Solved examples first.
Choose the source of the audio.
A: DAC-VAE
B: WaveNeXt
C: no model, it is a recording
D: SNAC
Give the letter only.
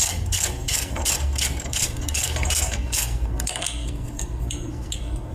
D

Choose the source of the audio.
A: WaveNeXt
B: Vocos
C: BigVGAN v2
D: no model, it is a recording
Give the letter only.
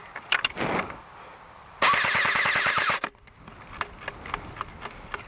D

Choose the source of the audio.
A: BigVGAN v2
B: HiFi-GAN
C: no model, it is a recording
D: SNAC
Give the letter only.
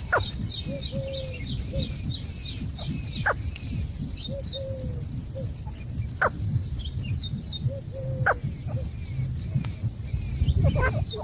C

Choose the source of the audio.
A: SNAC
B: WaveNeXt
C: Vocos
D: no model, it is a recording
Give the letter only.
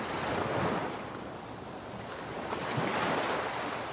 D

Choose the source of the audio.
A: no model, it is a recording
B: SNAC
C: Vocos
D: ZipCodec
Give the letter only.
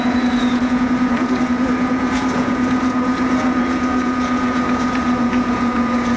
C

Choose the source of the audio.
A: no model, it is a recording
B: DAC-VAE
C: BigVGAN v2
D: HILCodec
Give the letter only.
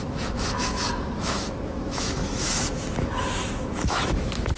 B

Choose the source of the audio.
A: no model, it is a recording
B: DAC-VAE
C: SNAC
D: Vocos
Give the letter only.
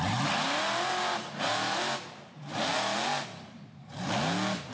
A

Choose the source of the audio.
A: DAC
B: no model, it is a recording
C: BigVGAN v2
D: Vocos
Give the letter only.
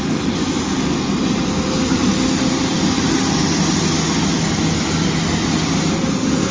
B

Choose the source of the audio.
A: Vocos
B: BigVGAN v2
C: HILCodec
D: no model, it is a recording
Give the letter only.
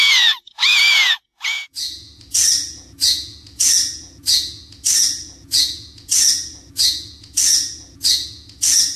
A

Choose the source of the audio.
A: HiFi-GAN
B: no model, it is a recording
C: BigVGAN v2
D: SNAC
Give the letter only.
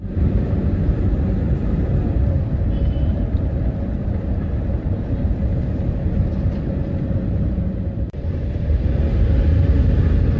C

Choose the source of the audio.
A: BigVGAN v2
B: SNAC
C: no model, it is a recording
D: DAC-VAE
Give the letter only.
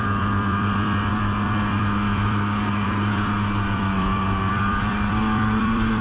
A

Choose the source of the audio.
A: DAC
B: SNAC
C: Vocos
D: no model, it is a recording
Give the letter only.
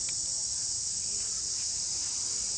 D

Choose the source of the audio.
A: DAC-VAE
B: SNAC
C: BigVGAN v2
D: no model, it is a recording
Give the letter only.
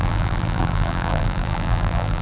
C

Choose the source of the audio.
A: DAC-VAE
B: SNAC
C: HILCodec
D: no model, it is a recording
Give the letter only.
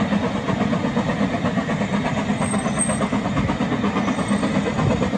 D